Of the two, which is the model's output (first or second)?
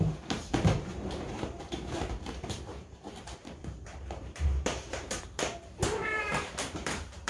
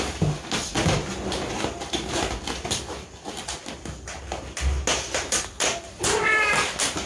first